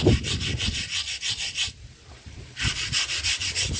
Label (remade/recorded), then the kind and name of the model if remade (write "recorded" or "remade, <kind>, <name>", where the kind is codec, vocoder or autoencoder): recorded